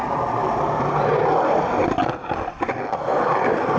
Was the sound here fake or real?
real